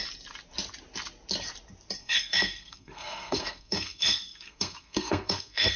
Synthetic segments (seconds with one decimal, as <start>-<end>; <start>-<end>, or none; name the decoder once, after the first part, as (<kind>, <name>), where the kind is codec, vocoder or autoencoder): 2.0-5.8 (codec, SNAC)